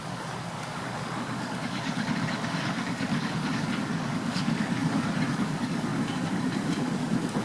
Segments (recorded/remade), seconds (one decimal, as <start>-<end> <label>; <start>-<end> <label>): 0.0-7.4 remade